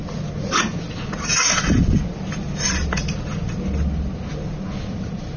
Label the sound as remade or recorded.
recorded